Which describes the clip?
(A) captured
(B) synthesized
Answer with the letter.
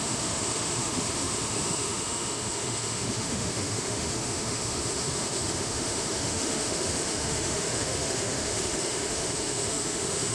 B